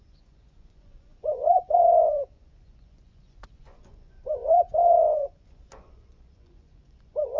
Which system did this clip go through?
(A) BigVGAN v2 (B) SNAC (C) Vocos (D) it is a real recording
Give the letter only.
C